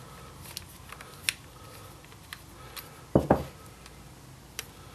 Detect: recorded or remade recorded